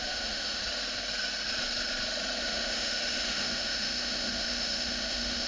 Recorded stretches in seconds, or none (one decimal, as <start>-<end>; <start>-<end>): 0.6-2.4